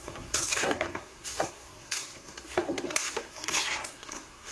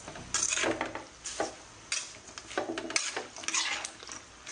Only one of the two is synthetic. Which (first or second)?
first